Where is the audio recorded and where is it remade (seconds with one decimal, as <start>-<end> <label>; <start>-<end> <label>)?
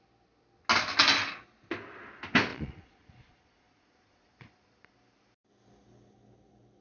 0.0-2.5 recorded; 2.5-4.9 remade; 4.9-6.8 recorded